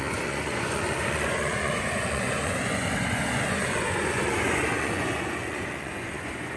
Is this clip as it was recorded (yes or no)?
no